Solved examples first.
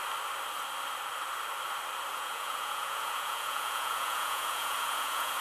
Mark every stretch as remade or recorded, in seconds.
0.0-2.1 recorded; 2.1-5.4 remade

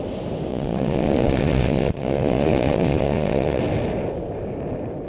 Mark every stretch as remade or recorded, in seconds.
0.0-0.5 recorded; 0.5-3.6 remade; 3.6-5.1 recorded

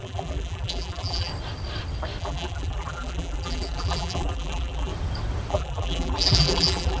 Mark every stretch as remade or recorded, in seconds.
0.0-1.3 remade; 1.3-2.2 recorded; 2.2-4.9 remade; 4.9-5.5 recorded; 5.5-7.0 remade

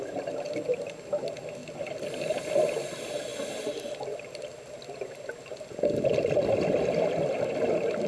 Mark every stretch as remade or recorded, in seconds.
0.0-8.1 recorded